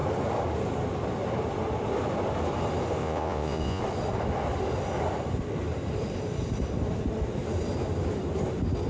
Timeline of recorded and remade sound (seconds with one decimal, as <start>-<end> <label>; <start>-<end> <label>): 0.0-3.0 recorded; 3.0-3.8 remade; 3.8-8.9 recorded